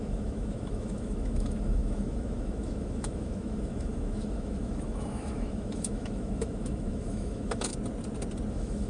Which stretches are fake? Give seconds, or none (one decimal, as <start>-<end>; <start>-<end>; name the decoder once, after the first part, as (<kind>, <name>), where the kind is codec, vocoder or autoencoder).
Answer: 0.0-7.7 (autoencoder, DAC-VAE); 8.5-8.9